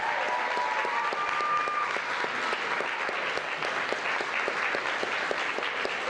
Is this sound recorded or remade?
recorded